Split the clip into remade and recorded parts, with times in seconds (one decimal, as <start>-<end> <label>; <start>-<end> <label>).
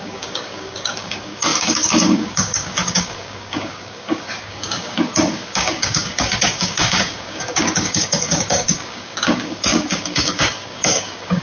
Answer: 0.0-11.4 remade